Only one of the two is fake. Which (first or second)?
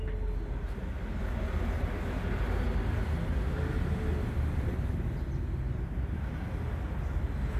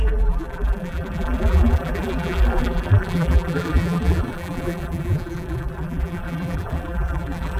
second